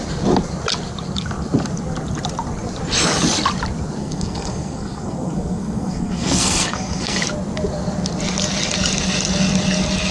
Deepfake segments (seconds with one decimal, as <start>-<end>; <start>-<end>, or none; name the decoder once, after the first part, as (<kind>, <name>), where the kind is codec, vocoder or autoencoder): 4.0-7.2 (codec, SNAC)